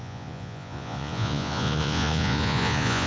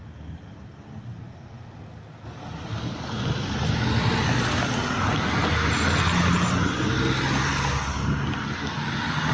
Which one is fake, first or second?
first